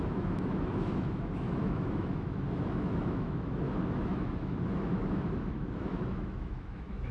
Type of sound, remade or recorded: remade